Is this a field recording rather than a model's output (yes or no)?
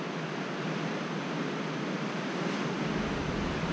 yes